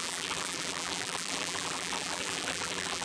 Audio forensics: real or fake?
fake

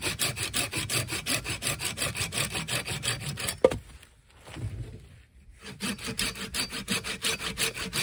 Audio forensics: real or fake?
real